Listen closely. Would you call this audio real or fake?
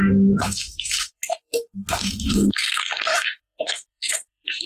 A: fake